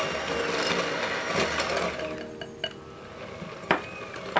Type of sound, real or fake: real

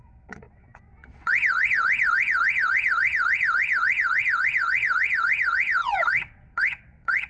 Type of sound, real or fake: fake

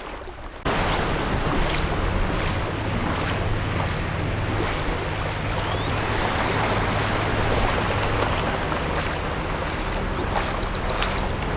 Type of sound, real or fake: real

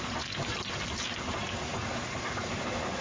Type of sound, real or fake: real